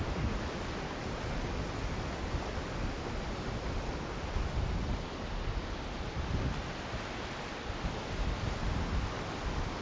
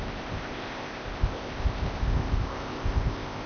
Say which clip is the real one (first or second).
first